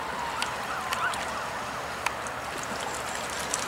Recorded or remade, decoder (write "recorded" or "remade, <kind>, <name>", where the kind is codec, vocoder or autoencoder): recorded